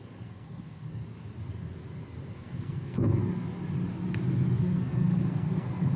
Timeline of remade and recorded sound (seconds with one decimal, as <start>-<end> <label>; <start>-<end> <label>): 0.0-1.0 remade; 1.0-2.3 recorded; 2.3-3.2 remade; 3.2-4.6 recorded; 4.6-6.0 remade